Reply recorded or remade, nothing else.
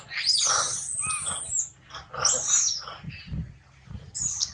recorded